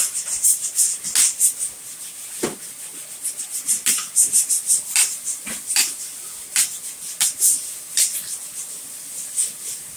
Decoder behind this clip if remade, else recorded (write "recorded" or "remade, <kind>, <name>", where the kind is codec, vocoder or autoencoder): recorded